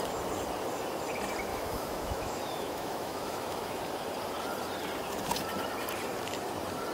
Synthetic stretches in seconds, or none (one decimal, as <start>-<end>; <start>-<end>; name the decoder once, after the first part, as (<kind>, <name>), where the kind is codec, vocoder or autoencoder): 1.5-3.8 (autoencoder, DAC-VAE)